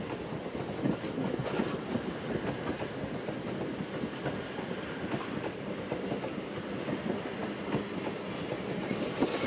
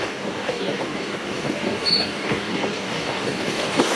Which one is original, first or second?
first